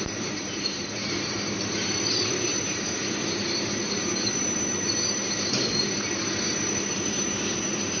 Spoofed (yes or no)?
yes